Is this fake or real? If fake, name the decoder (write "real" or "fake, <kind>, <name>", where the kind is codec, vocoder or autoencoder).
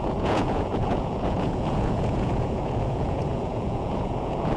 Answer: fake, vocoder, Vocos